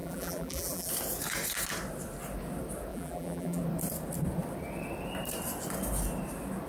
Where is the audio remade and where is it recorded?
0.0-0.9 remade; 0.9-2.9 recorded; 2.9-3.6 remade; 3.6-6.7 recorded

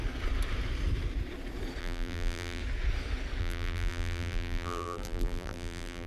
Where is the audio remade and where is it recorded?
0.0-1.8 recorded; 1.8-2.6 remade; 2.6-3.4 recorded; 3.4-6.1 remade

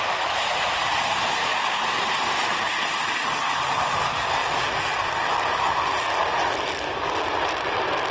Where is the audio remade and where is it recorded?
0.0-1.5 recorded; 1.5-3.7 remade; 3.7-8.1 recorded

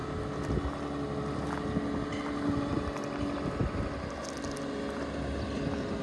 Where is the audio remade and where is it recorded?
0.0-6.0 recorded

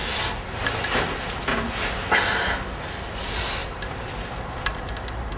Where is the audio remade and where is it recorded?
0.0-3.6 recorded; 3.6-4.9 remade; 4.9-5.4 recorded

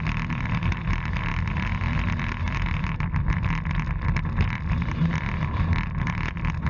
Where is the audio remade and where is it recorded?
0.0-6.7 remade

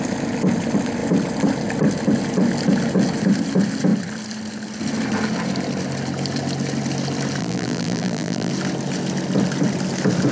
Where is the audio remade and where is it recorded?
0.0-7.4 recorded; 7.4-8.5 remade; 8.5-10.3 recorded